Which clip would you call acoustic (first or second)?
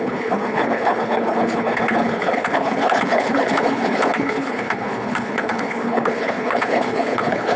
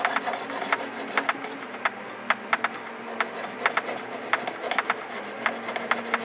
second